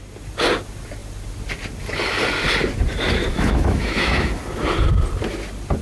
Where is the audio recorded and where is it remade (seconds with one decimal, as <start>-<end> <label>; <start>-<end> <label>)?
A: 0.0-3.3 recorded; 3.3-4.3 remade; 4.3-5.8 recorded